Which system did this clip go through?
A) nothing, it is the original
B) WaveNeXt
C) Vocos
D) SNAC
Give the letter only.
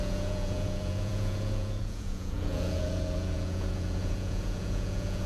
C